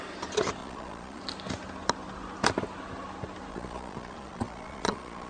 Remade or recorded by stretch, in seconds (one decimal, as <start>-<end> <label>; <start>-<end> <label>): 0.0-0.6 recorded; 0.6-1.2 remade; 1.2-3.5 recorded; 3.5-5.3 remade